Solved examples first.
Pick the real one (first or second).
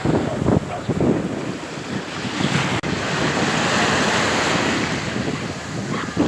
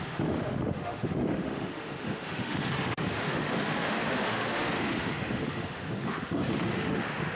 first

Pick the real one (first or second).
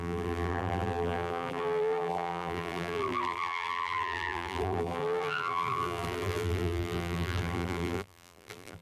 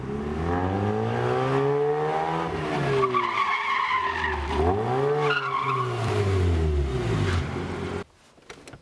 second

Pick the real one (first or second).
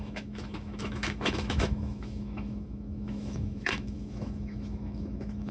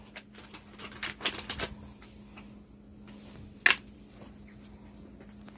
second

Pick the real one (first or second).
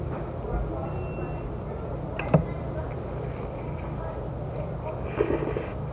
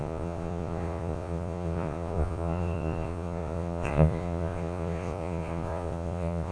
first